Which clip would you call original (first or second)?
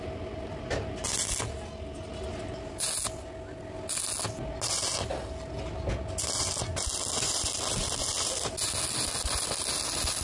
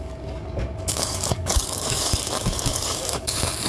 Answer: first